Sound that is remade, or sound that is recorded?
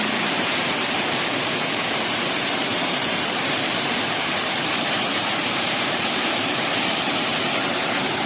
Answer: remade